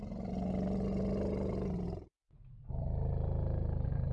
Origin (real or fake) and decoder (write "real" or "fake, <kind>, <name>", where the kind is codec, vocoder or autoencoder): real